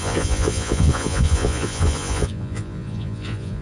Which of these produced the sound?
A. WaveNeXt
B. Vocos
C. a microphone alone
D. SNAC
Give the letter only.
B